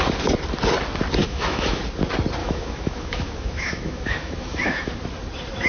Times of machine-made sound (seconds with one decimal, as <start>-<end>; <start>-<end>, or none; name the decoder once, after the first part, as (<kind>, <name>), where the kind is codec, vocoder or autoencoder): 1.2-1.8 (autoencoder, DAC-VAE); 2.4-4.9